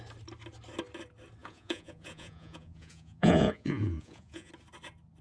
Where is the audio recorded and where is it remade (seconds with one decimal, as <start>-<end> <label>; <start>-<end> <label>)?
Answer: 0.0-1.4 recorded; 1.4-4.5 remade; 4.5-5.2 recorded